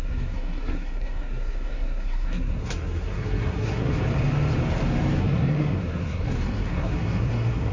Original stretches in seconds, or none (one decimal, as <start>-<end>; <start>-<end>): 3.9-5.2

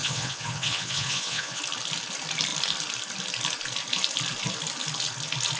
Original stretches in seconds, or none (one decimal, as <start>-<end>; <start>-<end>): 1.6-5.6

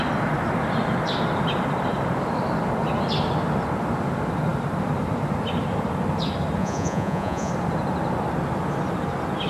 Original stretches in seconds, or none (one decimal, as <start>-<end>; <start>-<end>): 0.0-6.6; 7.5-9.5